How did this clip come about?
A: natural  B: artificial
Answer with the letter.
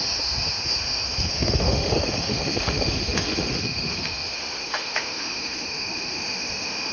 B